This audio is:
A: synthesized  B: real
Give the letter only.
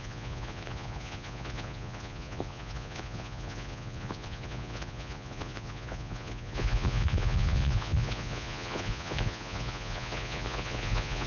A